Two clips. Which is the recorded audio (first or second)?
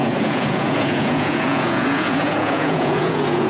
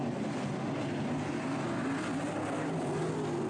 second